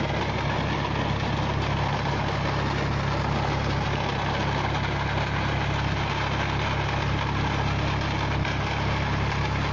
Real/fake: real